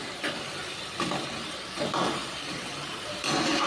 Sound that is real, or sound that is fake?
real